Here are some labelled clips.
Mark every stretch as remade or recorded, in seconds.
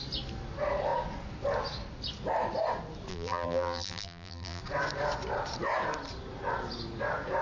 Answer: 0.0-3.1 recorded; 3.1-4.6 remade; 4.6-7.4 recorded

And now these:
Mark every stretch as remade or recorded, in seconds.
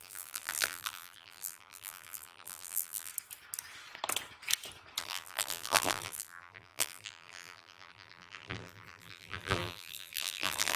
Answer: 0.0-3.1 remade; 3.1-5.0 recorded; 5.0-10.8 remade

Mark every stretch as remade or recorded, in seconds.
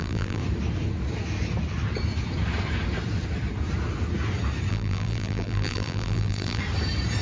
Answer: 0.0-0.4 remade; 0.4-4.7 recorded; 4.7-6.6 remade; 6.6-7.2 recorded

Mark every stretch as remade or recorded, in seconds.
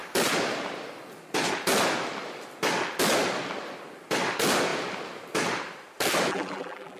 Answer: 0.0-6.3 recorded; 6.3-7.0 remade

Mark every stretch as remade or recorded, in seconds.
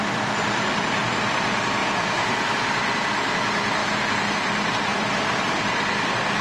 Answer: 0.0-1.8 recorded; 1.8-2.5 remade; 2.5-6.4 recorded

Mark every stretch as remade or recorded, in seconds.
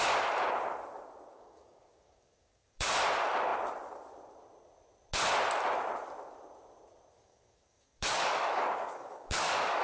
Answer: 0.0-1.3 recorded; 1.3-2.9 remade; 2.9-7.1 recorded; 7.1-9.8 remade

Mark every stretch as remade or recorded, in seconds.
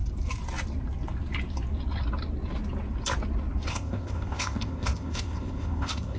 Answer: 0.0-3.7 recorded; 3.7-6.2 remade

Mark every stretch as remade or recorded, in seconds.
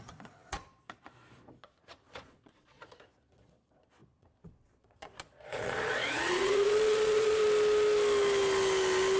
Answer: 0.0-7.4 remade; 7.4-9.2 recorded